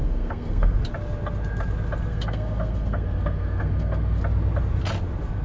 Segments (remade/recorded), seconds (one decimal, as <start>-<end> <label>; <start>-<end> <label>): 0.0-0.8 remade; 0.8-2.1 recorded; 2.1-4.2 remade; 4.2-5.4 recorded